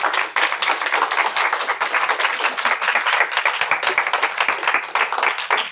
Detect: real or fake real